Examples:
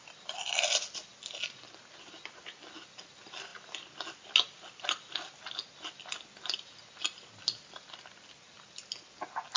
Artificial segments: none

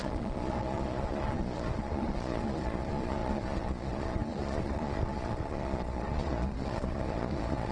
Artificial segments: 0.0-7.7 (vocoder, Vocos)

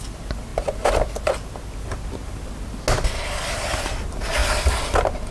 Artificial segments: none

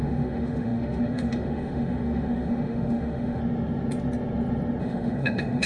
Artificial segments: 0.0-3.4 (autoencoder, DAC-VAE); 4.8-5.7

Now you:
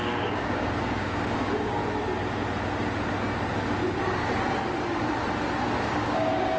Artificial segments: 0.0-1.8 (codec, DAC); 5.8-6.6

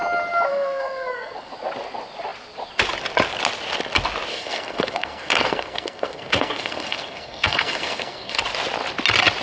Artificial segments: 0.5-1.5 (codec, SNAC); 4.3-8.4

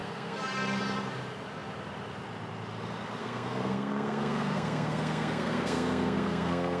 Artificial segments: 0.0-0.8 (codec, SNAC); 3.2-6.8

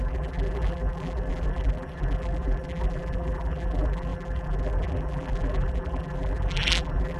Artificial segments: 0.0-7.2 (vocoder, BigVGAN v2)